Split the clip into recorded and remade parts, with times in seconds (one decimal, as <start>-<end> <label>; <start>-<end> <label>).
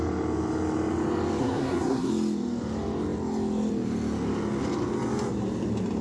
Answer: 0.0-1.4 recorded; 1.4-2.1 remade; 2.1-6.0 recorded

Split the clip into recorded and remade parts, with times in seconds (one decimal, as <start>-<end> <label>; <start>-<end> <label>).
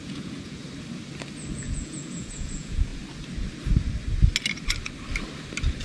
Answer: 0.0-0.6 remade; 0.6-1.5 recorded; 1.5-2.9 remade; 2.9-5.8 recorded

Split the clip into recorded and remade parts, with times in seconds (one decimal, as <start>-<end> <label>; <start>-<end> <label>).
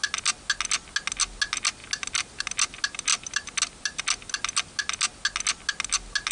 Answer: 0.0-6.3 recorded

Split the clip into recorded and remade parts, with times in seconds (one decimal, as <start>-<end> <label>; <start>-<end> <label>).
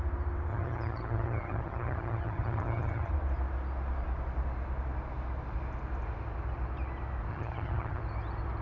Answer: 0.0-0.5 recorded; 0.5-3.1 remade; 3.1-7.3 recorded; 7.3-8.0 remade; 8.0-8.6 recorded